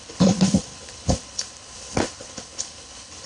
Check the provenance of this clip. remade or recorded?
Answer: remade